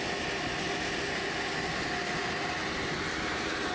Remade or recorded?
recorded